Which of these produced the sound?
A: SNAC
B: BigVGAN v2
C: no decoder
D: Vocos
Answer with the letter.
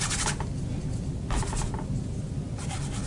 C